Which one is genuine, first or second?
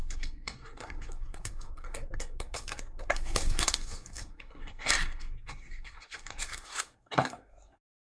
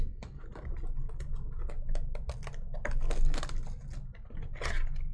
second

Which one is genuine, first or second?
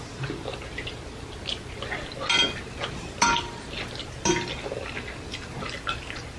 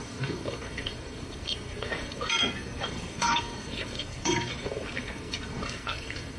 first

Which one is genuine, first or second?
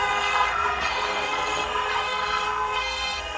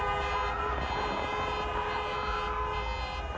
second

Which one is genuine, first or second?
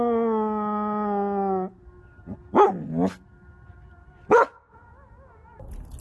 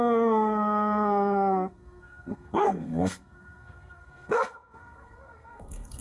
first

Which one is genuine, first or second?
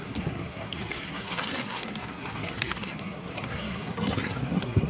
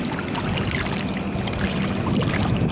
second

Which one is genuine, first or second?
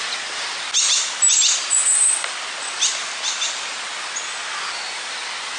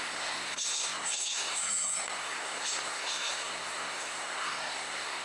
first